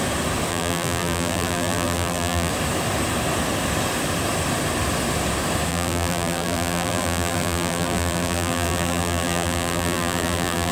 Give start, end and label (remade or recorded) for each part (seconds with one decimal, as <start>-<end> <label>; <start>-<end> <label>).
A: 0.0-0.5 recorded; 0.5-2.5 remade; 2.5-5.7 recorded; 5.7-10.7 remade